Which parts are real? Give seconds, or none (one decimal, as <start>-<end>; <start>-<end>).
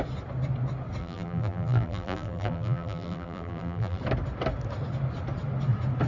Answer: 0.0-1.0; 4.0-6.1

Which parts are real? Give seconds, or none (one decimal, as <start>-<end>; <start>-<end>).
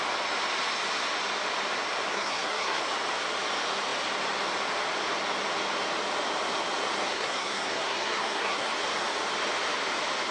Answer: 0.0-2.1; 2.8-7.1; 8.7-10.3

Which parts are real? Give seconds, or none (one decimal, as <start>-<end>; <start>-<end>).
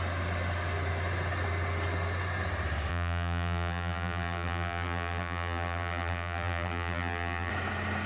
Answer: 0.0-2.9; 7.5-8.1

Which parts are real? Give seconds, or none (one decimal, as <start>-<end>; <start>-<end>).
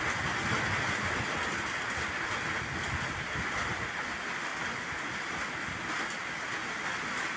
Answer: 0.0-7.4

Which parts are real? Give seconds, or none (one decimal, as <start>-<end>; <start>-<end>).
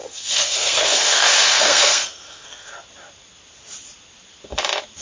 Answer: 2.7-5.0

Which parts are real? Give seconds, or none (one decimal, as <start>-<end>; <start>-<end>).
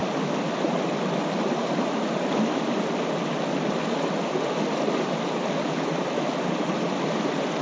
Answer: 0.0-7.6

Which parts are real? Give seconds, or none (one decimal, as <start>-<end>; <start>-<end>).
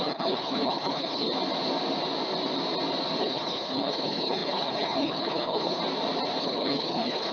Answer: 1.3-3.2; 5.8-6.4